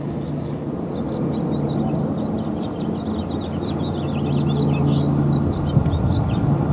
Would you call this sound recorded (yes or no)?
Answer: yes